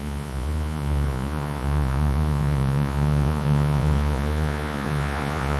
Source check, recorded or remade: remade